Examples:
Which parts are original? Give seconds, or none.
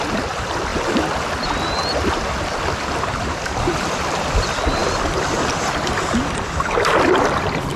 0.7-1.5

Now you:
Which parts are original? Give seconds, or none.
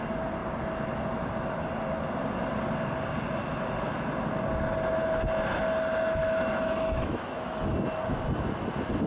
0.0-6.2; 7.6-9.1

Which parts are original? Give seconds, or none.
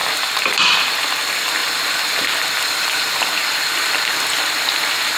0.0-1.2; 1.6-3.4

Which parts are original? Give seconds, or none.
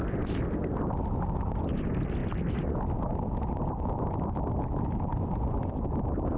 0.0-6.4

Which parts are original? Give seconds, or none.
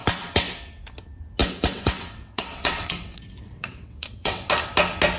0.5-1.4; 4.5-5.2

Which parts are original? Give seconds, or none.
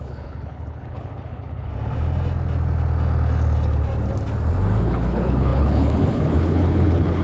1.7-4.8